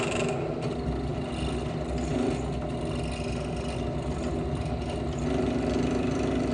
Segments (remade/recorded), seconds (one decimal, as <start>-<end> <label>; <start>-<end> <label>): 0.0-6.5 recorded